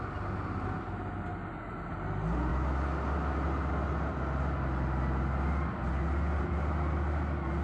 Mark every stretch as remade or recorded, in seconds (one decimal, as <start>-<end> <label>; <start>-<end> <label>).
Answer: 0.0-7.6 recorded